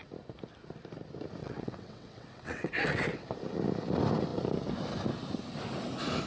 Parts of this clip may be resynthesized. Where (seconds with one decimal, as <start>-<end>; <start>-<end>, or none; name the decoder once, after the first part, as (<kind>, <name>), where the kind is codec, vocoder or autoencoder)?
1.4-3.3 (vocoder, WaveNeXt)